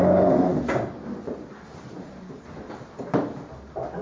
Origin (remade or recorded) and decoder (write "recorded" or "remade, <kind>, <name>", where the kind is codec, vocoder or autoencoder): recorded